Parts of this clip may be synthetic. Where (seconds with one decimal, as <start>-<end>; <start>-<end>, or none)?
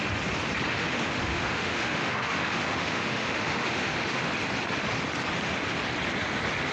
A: 0.7-4.3